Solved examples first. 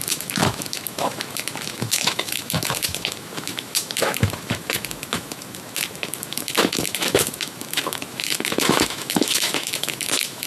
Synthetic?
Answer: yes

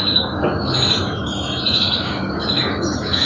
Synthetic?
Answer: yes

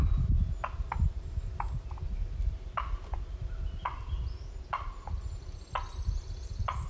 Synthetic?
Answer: no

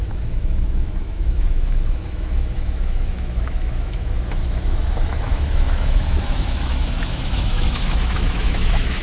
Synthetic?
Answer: yes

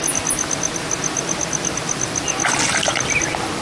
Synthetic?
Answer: no